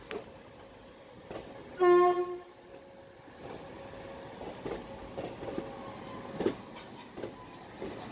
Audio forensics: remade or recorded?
recorded